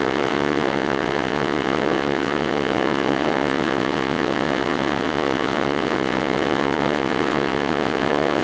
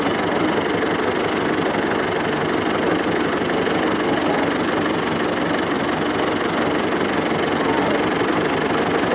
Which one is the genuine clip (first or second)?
second